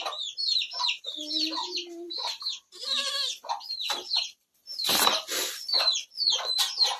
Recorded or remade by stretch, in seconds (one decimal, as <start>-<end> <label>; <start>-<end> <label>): 0.0-7.0 remade